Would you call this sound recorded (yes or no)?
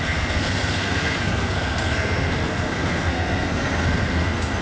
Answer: no